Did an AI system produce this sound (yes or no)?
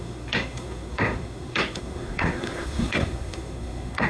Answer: yes